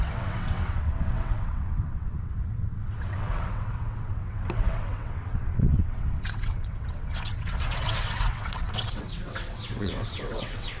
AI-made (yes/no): yes